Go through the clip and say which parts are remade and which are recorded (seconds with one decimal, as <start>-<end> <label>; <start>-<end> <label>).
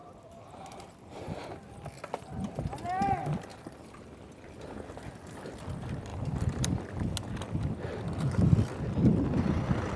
0.0-3.5 recorded; 3.5-4.1 remade; 4.1-6.1 recorded; 6.1-6.8 remade; 6.8-10.0 recorded